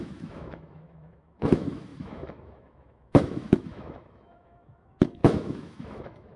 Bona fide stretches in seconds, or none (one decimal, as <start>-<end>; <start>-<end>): none